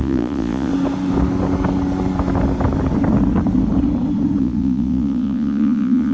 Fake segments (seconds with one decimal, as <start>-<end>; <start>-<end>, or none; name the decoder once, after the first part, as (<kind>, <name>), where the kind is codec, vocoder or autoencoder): 0.0-0.7 (vocoder, Vocos); 4.4-6.1